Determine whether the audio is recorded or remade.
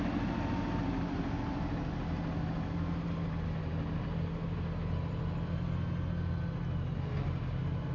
recorded